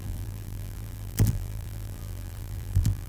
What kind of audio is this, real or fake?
fake